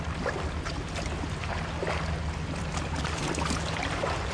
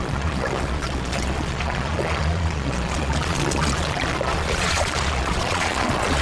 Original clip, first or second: first